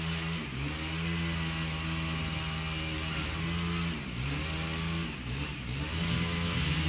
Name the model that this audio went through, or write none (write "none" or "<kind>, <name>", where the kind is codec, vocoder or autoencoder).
none